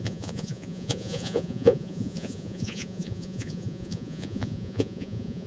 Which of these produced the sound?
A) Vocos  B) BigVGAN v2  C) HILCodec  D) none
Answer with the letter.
A